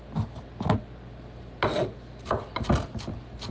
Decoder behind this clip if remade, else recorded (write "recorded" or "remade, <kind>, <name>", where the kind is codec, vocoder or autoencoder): recorded